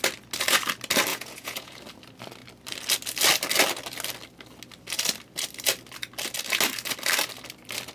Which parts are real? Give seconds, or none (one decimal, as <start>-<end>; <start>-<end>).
0.0-1.1; 1.8-7.9